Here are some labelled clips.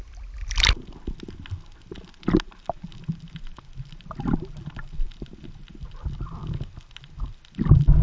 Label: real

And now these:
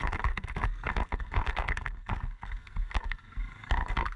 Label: fake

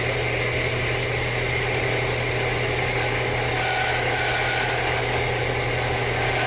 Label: real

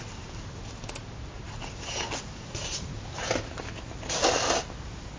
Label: real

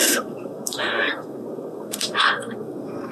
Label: fake